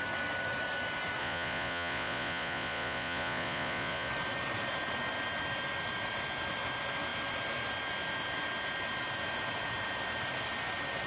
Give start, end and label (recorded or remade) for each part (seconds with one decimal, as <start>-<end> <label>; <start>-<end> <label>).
0.0-1.2 recorded; 1.2-4.1 remade; 4.1-11.1 recorded